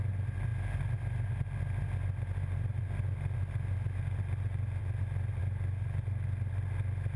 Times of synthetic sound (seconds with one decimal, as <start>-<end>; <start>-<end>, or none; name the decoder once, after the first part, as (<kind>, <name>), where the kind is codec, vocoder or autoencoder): none